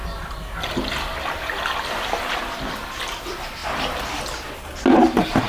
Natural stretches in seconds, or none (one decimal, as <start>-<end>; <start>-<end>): 0.0-5.5